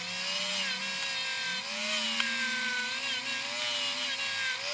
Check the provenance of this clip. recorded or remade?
recorded